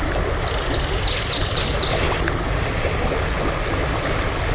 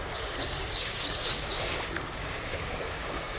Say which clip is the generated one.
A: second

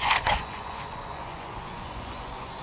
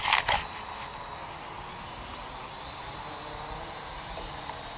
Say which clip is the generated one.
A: first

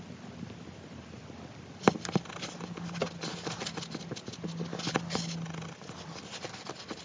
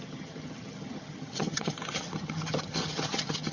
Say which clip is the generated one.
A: second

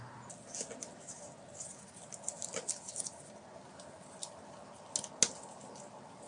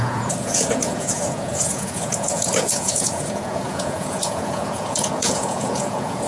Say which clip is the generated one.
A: second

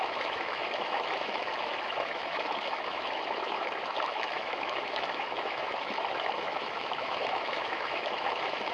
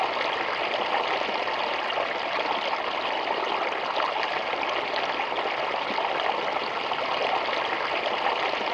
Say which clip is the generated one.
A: first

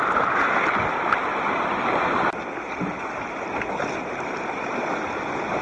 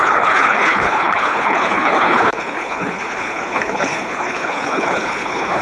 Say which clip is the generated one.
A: second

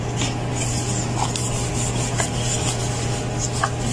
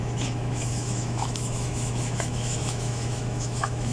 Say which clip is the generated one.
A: second